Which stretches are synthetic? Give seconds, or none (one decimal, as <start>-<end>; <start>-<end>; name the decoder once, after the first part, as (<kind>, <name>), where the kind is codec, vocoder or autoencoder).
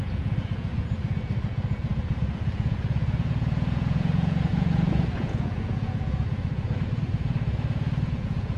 0.0-8.6 (vocoder, Vocos)